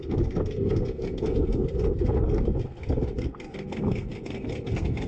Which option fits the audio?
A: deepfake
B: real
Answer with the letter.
A